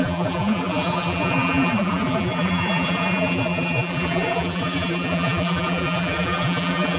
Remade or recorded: remade